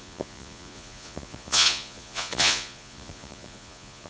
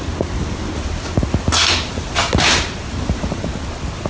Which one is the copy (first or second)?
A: first